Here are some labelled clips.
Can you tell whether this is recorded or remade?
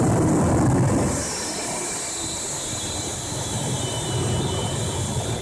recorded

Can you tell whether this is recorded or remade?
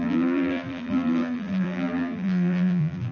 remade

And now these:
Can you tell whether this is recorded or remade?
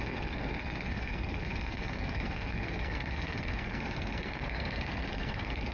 remade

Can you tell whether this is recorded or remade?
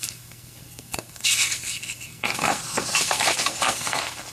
remade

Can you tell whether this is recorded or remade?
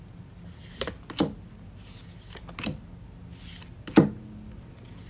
recorded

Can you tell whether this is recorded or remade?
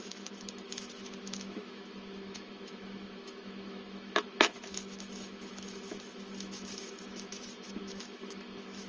remade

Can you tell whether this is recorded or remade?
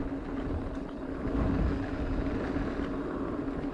recorded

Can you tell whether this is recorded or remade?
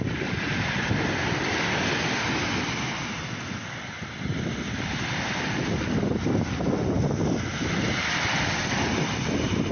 recorded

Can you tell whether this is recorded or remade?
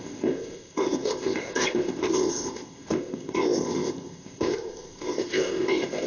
remade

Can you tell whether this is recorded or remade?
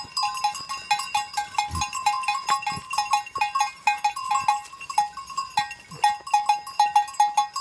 recorded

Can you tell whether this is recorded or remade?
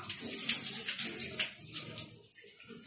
recorded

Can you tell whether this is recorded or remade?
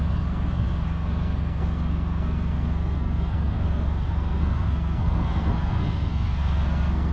remade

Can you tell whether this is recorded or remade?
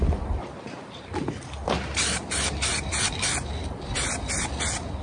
remade